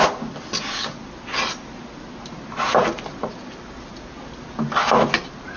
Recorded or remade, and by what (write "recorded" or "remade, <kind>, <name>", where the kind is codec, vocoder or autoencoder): recorded